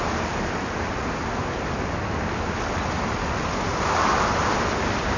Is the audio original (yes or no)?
yes